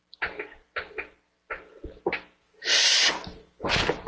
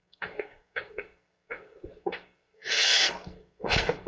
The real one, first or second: first